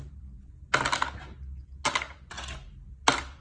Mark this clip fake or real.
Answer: real